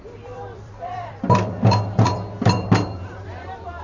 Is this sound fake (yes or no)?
yes